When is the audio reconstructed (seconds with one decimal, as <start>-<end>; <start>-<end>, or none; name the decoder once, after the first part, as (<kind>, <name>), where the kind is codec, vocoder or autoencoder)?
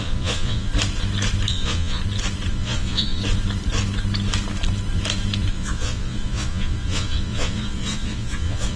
0.0-0.7 (vocoder, Vocos); 1.5-2.0; 2.5-3.2; 5.5-8.8